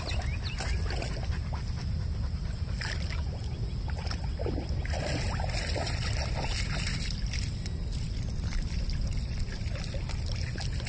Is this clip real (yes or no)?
yes